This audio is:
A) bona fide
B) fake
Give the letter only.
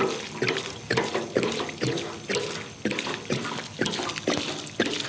A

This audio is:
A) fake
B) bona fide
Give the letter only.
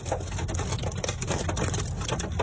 B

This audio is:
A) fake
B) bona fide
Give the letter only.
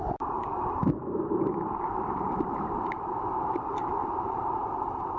A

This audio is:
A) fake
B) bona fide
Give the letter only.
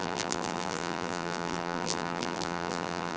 A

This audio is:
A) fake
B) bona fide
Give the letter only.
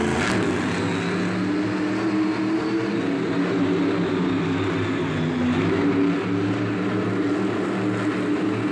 B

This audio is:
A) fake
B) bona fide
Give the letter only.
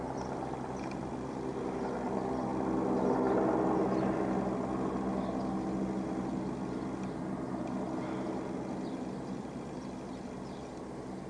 B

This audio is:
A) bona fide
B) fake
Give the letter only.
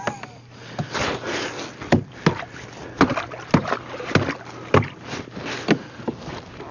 A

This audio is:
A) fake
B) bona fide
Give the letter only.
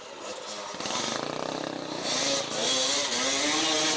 B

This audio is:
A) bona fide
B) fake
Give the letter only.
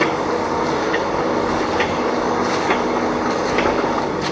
B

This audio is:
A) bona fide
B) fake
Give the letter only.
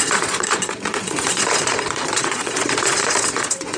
B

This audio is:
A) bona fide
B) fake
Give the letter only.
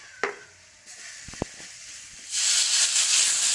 A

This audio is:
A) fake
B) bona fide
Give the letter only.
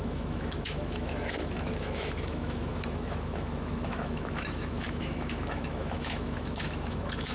A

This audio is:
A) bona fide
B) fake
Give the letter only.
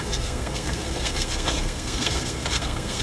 B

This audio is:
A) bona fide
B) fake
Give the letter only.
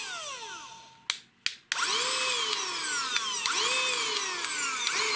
A